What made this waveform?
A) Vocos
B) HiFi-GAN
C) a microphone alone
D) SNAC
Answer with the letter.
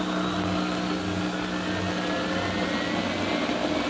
C